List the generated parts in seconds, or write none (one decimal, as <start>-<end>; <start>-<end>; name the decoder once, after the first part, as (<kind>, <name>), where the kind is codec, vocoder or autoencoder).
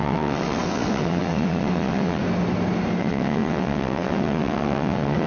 0.0-2.2 (vocoder, WaveNeXt); 3.0-5.3